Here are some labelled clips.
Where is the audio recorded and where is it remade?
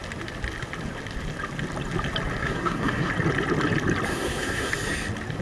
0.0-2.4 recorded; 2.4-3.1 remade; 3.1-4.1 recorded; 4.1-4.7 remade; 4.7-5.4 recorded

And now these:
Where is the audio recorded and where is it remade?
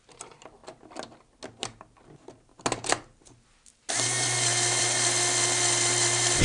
0.0-6.4 recorded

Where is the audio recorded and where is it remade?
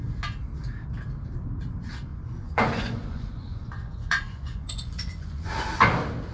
0.0-2.1 recorded; 2.1-5.5 remade; 5.5-6.3 recorded